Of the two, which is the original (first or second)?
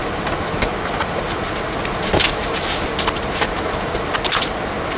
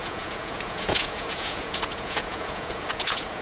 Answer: first